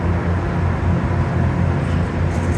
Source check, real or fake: real